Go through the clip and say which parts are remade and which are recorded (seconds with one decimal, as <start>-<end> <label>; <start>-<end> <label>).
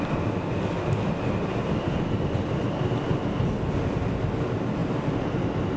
0.0-5.8 recorded